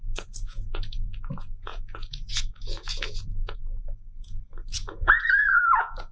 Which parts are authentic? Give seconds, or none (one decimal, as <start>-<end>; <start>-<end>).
none